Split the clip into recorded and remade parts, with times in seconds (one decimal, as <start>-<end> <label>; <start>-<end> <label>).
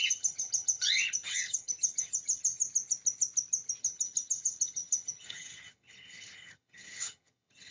0.0-2.6 remade; 2.6-3.8 recorded; 3.8-7.7 remade